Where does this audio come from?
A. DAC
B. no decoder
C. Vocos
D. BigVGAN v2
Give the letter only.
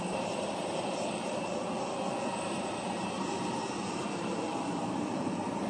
D